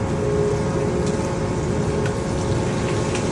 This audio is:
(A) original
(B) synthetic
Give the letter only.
A